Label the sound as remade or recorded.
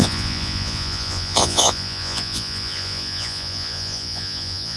remade